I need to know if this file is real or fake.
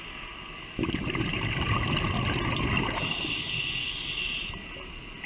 real